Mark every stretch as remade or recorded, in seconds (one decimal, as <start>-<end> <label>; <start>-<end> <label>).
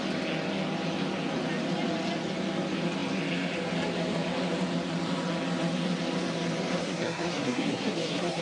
0.0-6.8 recorded; 6.8-8.4 remade